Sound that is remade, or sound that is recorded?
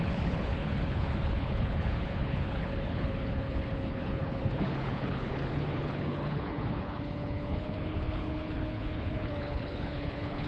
remade